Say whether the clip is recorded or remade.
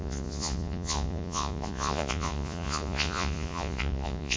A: remade